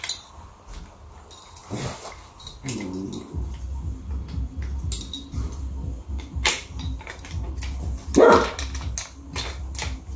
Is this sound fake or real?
real